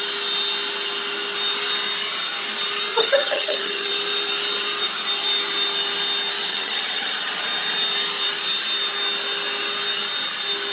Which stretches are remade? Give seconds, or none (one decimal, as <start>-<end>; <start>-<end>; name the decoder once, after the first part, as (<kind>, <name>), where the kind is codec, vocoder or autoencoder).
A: 2.9-3.9 (vocoder, HiFi-GAN); 6.5-7.3